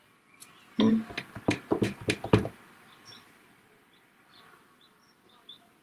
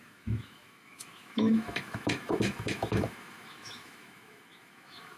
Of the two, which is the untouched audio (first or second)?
first